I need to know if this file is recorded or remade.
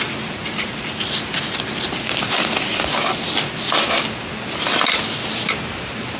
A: recorded